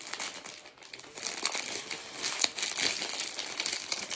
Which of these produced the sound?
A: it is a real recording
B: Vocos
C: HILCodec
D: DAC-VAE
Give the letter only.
A